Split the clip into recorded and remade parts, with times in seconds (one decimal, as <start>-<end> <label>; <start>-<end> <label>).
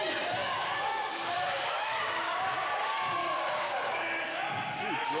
0.0-0.4 recorded; 0.4-2.6 remade; 2.6-3.2 recorded; 3.2-4.8 remade; 4.8-5.2 recorded